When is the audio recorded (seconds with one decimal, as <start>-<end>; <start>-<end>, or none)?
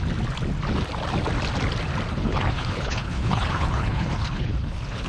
0.0-2.1